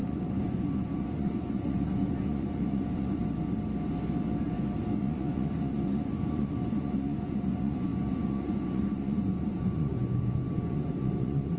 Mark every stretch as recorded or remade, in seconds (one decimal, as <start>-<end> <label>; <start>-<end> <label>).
0.0-3.2 remade; 3.2-5.0 recorded; 5.0-11.6 remade